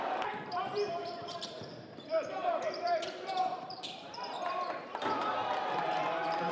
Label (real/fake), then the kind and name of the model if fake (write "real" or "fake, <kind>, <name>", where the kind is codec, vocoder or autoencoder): fake, vocoder, BigVGAN v2